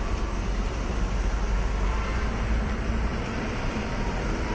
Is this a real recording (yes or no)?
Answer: no